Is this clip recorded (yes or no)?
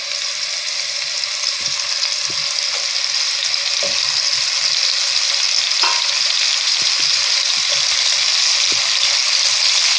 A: yes